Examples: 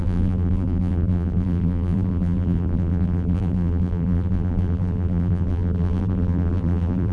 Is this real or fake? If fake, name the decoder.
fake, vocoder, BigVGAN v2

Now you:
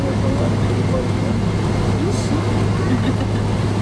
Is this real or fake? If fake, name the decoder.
real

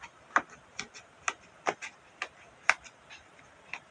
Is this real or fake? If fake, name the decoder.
real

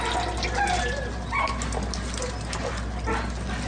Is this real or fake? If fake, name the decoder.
real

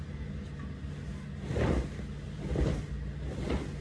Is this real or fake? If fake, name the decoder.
real